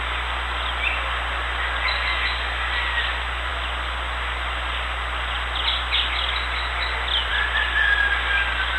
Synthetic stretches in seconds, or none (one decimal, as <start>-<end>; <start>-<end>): none